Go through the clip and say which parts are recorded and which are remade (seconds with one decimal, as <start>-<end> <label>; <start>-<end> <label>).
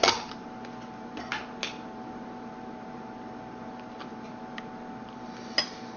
0.0-6.0 recorded